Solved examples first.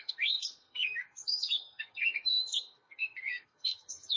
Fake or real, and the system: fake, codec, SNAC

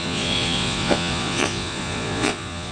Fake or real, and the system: fake, vocoder, Vocos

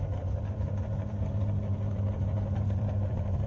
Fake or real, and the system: fake, vocoder, BigVGAN v2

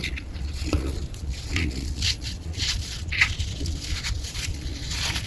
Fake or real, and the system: fake, vocoder, Vocos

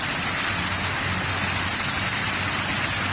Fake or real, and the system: real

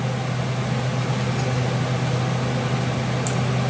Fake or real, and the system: real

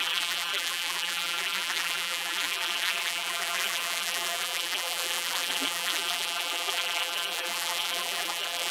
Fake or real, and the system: fake, vocoder, BigVGAN v2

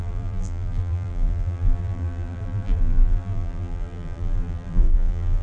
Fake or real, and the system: fake, vocoder, BigVGAN v2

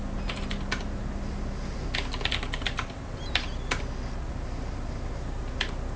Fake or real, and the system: real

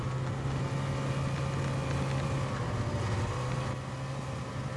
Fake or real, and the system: real